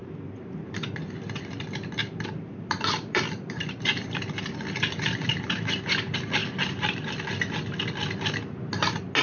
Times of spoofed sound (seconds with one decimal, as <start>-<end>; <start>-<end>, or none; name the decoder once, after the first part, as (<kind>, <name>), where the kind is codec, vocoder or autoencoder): 0.0-1.0 (vocoder, BigVGAN v2); 2.0-5.7